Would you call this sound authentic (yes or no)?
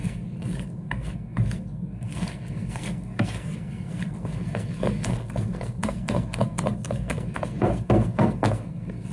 no